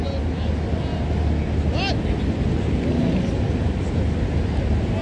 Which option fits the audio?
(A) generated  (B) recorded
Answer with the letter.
B